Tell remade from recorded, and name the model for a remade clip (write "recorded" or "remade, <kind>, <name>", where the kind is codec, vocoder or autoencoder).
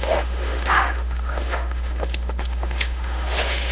remade, autoencoder, DAC-VAE